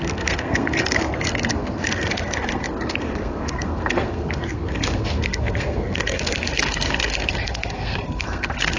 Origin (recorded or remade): remade